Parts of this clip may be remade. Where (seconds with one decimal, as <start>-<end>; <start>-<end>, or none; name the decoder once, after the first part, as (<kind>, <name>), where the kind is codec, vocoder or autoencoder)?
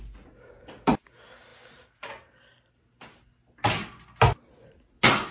none